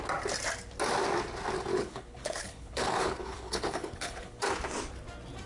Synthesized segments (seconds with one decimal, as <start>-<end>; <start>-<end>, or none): 1.7-4.4